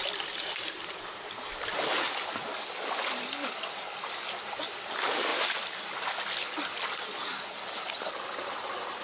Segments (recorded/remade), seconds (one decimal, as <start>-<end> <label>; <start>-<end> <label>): 0.0-2.5 recorded; 2.5-4.3 remade; 4.3-9.0 recorded